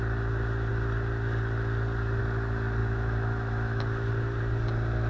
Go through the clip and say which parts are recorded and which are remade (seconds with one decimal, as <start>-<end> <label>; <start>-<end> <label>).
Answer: 0.0-2.8 recorded; 2.8-4.1 remade; 4.1-5.1 recorded